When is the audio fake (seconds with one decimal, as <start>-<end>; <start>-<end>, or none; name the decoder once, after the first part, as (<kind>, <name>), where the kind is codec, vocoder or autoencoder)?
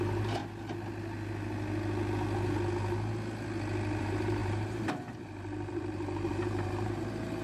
0.0-0.4 (vocoder, BigVGAN v2); 4.0-7.4